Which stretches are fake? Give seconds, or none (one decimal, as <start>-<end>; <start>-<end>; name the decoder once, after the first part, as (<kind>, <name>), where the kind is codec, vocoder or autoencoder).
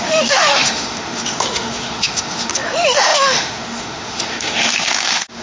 0.0-5.4 (autoencoder, DAC-VAE)